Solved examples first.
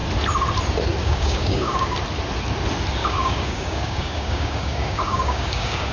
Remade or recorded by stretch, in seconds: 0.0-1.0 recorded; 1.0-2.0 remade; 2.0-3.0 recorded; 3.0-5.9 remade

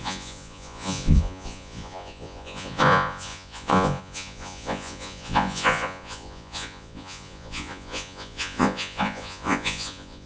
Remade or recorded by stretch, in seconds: 0.0-10.3 remade

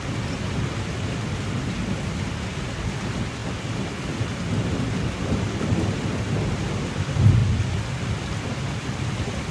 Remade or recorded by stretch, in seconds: 0.0-3.4 recorded; 3.4-4.4 remade; 4.4-7.4 recorded; 7.4-9.5 remade

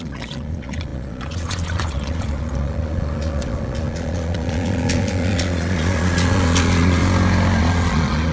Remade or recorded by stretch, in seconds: 0.0-7.0 remade; 7.0-7.6 recorded; 7.6-8.3 remade